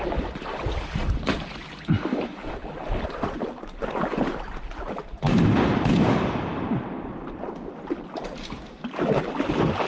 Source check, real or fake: fake